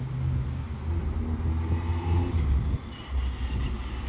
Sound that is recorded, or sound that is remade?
recorded